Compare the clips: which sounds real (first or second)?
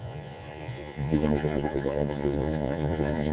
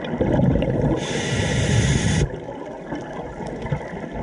second